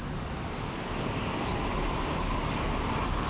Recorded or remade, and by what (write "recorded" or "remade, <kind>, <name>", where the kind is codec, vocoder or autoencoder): remade, vocoder, BigVGAN v2